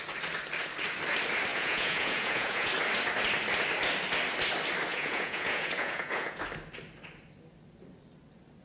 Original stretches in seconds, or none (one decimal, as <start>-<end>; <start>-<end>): 0.0-1.5; 2.7-4.9; 6.4-8.6